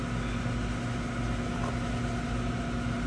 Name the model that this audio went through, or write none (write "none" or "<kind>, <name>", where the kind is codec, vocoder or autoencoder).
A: none